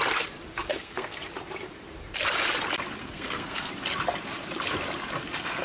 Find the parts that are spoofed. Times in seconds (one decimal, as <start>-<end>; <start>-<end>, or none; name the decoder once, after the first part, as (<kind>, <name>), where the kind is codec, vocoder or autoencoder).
0.7-1.2 (codec, SNAC); 3.0-3.7